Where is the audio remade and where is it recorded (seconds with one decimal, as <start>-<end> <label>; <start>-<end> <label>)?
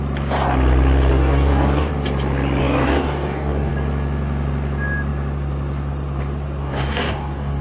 0.0-1.1 recorded; 1.1-1.9 remade; 1.9-2.6 recorded; 2.6-3.7 remade; 3.7-6.6 recorded; 6.6-7.6 remade